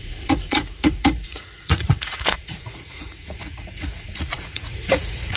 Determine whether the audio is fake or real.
fake